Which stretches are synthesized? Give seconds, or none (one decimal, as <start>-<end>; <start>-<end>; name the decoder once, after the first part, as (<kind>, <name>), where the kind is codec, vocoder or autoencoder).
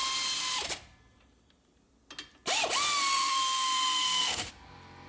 3.1-4.5 (codec, SNAC)